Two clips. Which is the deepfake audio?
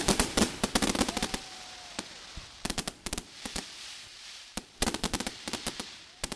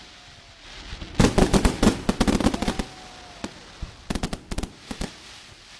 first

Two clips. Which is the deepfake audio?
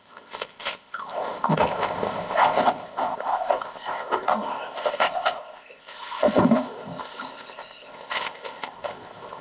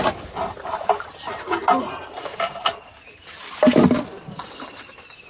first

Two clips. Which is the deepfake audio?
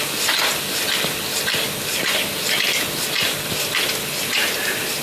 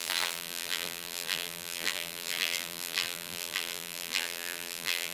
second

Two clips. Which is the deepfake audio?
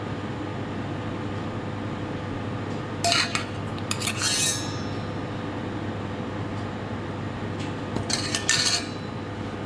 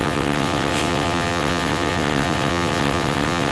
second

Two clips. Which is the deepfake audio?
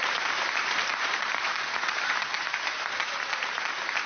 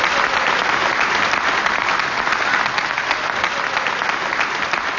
first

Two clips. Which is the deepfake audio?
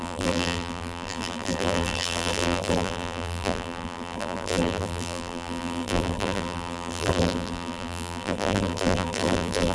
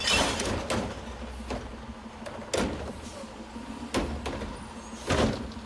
first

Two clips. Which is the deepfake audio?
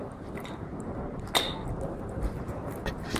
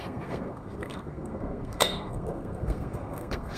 second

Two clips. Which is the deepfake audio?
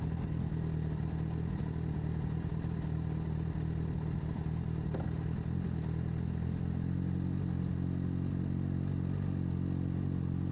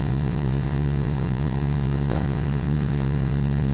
second